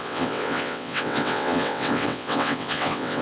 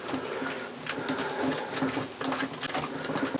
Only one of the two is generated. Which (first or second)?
first